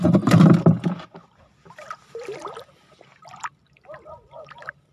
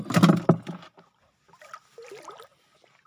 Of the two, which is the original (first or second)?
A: second